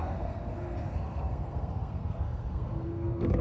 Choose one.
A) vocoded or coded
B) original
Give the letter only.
A